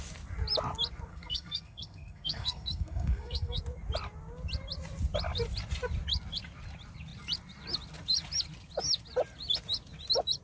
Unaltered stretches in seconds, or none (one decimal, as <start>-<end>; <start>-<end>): 0.0-1.1; 3.6-10.4